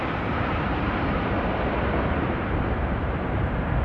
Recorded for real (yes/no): no